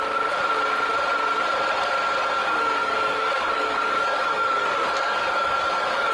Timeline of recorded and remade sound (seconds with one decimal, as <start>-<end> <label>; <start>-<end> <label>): 0.0-2.4 recorded; 2.4-6.1 remade